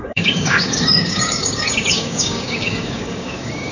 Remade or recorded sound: remade